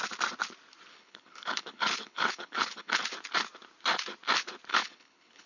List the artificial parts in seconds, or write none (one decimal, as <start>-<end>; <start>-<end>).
0.9-3.0; 4.7-5.5